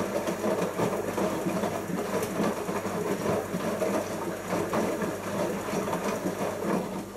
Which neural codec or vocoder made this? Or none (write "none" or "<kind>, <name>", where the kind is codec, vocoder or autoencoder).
none